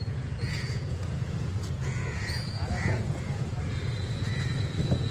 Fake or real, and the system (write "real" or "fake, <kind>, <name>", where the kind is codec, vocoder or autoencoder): fake, vocoder, Vocos